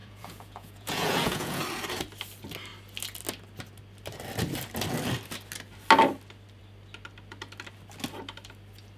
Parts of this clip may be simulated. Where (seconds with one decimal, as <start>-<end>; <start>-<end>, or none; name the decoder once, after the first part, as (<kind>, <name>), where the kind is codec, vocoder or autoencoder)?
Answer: 0.0-1.6 (vocoder, Vocos)